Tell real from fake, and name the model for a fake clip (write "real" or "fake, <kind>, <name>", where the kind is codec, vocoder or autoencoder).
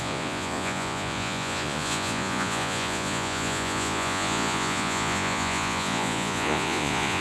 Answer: fake, vocoder, Vocos